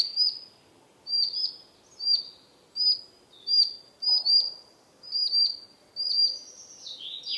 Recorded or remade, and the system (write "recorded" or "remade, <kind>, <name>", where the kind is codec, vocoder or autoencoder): recorded